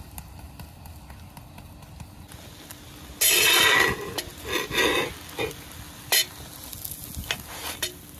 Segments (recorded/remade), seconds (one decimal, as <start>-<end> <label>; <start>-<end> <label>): 0.0-8.2 recorded

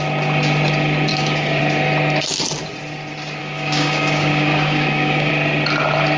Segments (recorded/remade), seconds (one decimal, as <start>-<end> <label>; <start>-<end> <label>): 0.0-1.1 recorded; 1.1-1.6 remade; 1.6-3.4 recorded; 3.4-5.3 remade; 5.3-6.2 recorded

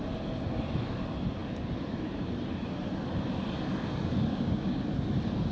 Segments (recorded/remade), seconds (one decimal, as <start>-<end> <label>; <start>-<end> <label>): 0.0-4.3 recorded; 4.3-4.8 remade; 4.8-5.5 recorded

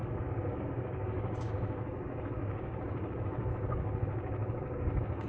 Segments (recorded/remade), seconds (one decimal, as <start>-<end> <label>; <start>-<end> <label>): 0.0-5.3 remade